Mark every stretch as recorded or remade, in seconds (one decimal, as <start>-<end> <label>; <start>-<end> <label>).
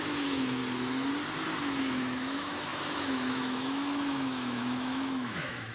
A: 0.0-0.6 remade; 0.6-1.6 recorded; 1.6-5.7 remade